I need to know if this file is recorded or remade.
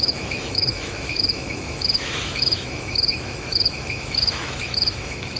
remade